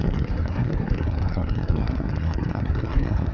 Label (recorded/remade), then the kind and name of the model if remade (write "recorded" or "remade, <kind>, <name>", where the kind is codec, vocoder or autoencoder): remade, codec, SNAC